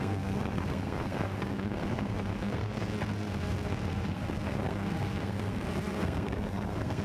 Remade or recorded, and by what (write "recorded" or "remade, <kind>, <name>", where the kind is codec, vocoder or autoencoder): remade, codec, SNAC